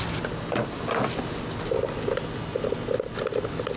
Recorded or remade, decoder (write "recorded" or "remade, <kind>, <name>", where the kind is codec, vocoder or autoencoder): recorded